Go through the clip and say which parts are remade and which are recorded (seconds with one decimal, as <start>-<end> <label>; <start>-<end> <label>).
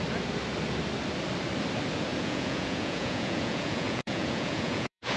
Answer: 0.0-2.1 recorded; 2.1-5.2 remade